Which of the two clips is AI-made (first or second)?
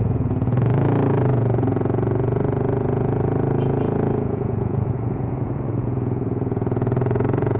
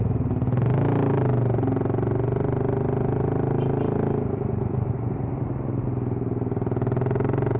first